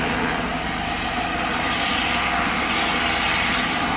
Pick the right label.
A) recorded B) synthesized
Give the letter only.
A